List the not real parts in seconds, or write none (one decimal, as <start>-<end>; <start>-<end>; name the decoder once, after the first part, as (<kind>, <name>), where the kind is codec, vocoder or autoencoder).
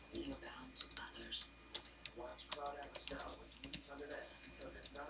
3.3-3.9 (autoencoder, DAC-VAE)